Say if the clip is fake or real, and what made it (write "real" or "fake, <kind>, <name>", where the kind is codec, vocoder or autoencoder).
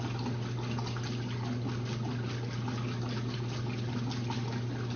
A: real